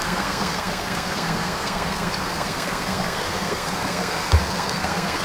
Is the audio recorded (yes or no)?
no